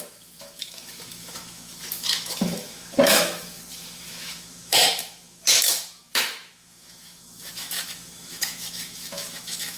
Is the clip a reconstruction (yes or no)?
yes